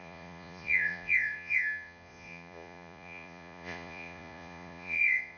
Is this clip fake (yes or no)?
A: yes